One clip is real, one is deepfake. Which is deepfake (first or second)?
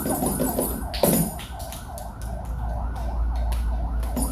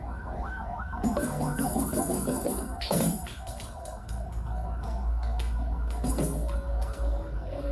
second